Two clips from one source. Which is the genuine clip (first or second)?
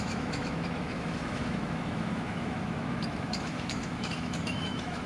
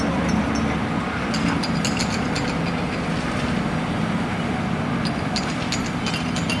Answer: second